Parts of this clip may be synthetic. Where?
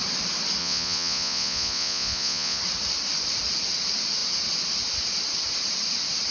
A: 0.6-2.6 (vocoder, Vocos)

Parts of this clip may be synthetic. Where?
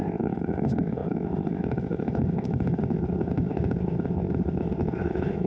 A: 0.0-5.5 (codec, ZipCodec)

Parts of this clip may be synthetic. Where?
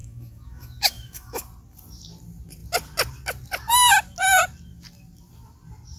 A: 0.0-1.4 (autoencoder, DAC-VAE)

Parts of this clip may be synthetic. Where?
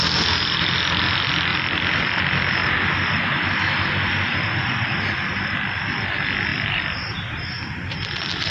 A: 1.5-2.2 (vocoder, BigVGAN v2); 6.5-8.5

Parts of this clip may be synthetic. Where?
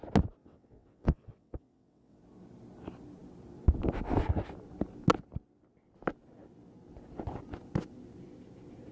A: 0.4-2.2 (vocoder, WaveNeXt)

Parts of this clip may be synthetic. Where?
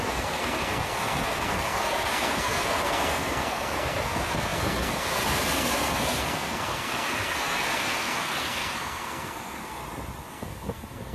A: 0.0-9.8 (codec, SNAC); 10.3-11.1